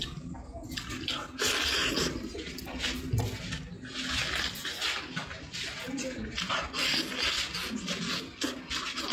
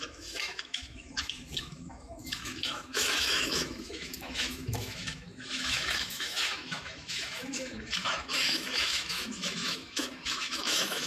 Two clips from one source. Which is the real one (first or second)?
first